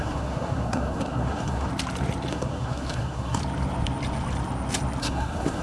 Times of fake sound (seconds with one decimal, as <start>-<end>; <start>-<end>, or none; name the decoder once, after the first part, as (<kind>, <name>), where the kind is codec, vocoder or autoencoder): 0.0-1.7 (codec, SNAC); 2.3-3.4; 5.0-5.6